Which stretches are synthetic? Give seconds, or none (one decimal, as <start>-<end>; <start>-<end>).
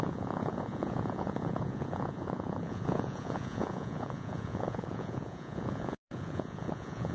0.0-7.1